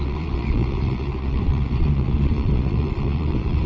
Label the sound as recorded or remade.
remade